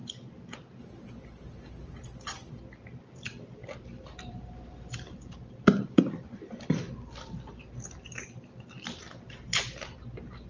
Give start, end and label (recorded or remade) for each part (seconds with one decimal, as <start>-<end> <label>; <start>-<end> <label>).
0.0-3.6 recorded; 3.6-7.6 remade; 7.6-10.5 recorded